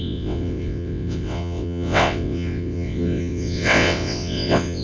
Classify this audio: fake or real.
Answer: fake